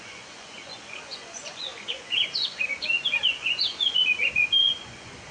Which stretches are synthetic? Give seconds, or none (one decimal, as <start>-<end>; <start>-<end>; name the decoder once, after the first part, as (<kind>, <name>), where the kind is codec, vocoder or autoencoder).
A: 0.0-5.3 (vocoder, Vocos)